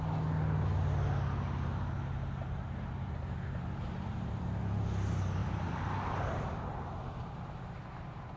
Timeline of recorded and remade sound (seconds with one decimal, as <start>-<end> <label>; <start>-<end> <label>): 0.0-5.4 recorded; 5.4-7.2 remade; 7.2-8.4 recorded